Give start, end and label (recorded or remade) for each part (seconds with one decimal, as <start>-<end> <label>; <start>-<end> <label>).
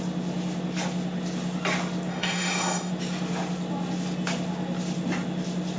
0.0-2.1 recorded; 2.1-2.9 remade; 2.9-5.8 recorded